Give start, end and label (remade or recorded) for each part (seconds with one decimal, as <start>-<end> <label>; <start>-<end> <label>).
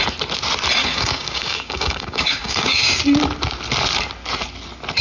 0.0-0.8 recorded; 0.8-3.0 remade; 3.0-5.0 recorded